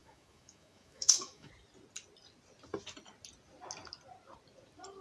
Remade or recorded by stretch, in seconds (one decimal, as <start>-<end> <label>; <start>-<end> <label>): 0.0-1.5 remade; 1.5-5.0 recorded